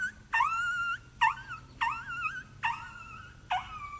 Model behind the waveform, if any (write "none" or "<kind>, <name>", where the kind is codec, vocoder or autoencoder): none